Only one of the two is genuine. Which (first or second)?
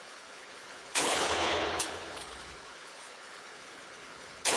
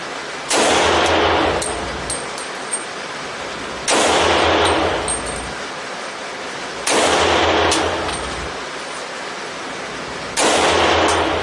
second